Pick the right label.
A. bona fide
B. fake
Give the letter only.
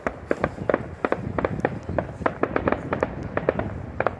A